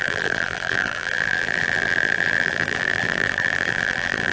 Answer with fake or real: fake